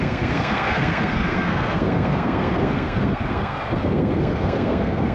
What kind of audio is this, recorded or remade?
remade